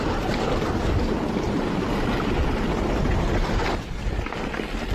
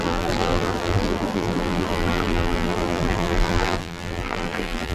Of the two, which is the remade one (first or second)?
second